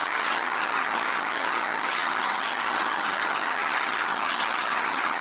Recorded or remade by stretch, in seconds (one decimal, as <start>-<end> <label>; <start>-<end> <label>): 0.0-5.2 remade

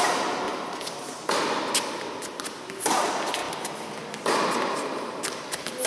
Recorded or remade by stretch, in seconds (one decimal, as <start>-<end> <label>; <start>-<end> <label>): 0.0-5.9 recorded

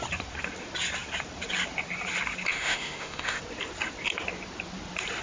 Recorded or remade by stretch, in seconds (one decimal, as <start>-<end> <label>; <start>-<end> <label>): 0.0-2.5 recorded; 2.5-3.4 remade; 3.4-5.2 recorded

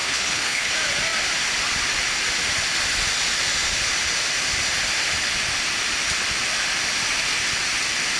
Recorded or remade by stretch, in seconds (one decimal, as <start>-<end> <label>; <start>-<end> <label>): 0.0-0.7 remade; 0.7-8.2 recorded